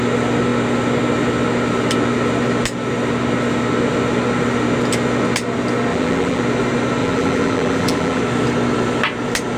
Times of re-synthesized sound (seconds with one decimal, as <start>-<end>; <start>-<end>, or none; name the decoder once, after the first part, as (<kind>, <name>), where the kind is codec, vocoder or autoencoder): 5.9-6.4 (vocoder, BigVGAN v2); 7.0-8.2